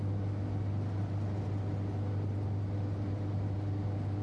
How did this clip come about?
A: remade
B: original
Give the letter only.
B